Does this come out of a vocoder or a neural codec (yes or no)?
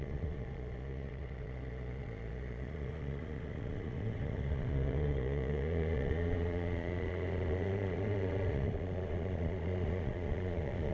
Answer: yes